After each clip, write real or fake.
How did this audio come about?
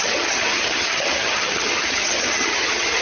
fake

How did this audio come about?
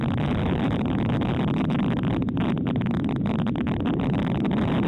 fake